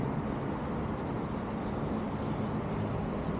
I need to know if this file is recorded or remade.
recorded